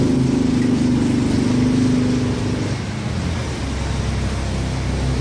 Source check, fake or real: real